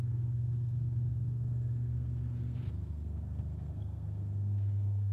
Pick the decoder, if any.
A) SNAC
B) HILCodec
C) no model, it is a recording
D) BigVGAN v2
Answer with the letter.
A